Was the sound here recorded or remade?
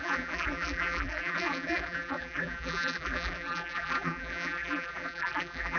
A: remade